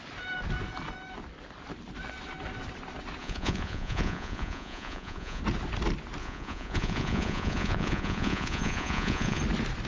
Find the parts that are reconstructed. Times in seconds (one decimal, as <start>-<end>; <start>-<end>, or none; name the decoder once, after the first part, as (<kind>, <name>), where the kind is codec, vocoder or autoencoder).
3.2-5.4 (vocoder, Vocos); 6.2-9.4